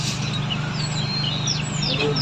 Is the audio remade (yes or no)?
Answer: no